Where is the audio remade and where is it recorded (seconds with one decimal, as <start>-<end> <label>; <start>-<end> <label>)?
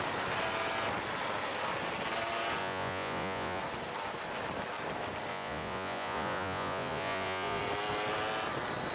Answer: 0.0-2.6 recorded; 2.6-3.6 remade; 3.6-5.3 recorded; 5.3-7.6 remade; 7.6-8.9 recorded